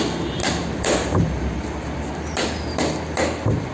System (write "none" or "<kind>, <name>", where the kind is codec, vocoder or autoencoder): none